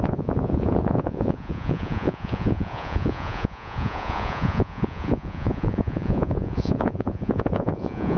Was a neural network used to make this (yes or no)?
yes